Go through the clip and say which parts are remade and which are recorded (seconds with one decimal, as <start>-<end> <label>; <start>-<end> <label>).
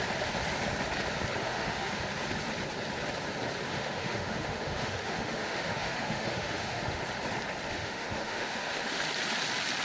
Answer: 0.0-1.4 recorded; 1.4-2.0 remade; 2.0-3.7 recorded; 3.7-7.0 remade; 7.0-7.7 recorded; 7.7-9.0 remade; 9.0-9.8 recorded